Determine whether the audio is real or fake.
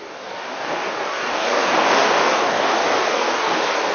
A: fake